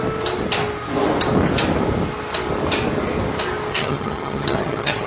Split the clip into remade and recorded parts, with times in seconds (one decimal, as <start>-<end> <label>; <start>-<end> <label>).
0.0-3.7 recorded; 3.7-5.1 remade